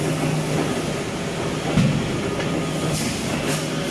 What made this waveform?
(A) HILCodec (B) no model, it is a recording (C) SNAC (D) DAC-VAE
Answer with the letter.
B